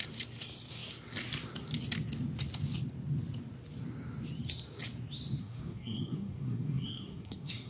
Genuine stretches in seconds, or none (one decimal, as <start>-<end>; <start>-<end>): 0.0-5.4